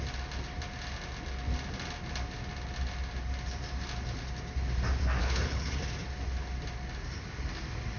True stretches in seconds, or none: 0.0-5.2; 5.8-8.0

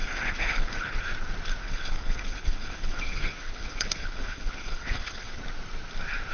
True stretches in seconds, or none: 1.0-1.6; 5.4-6.3

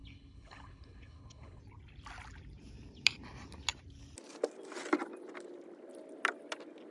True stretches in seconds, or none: 1.6-6.9

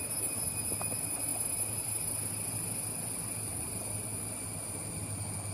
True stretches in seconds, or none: 0.0-5.5